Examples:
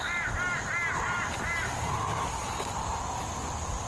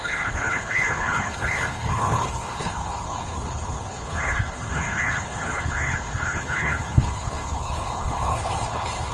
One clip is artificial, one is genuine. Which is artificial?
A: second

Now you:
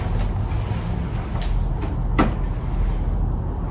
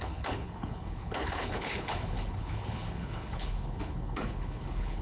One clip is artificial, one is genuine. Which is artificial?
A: second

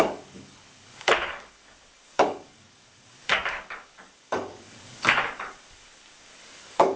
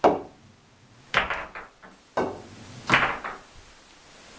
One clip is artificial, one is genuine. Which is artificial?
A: first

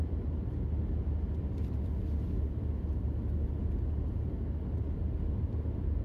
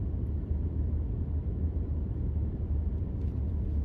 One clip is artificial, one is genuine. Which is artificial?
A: second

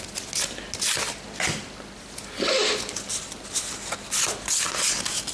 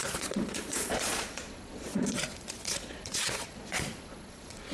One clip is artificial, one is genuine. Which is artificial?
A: second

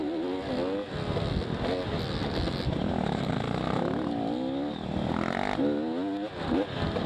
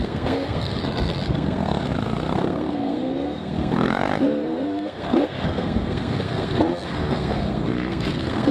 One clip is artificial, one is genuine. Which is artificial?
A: second